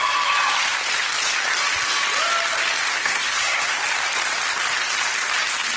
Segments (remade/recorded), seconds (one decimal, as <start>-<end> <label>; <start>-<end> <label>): 0.0-2.9 recorded; 2.9-3.8 remade; 3.8-5.8 recorded